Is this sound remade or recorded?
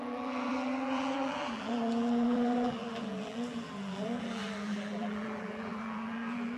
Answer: remade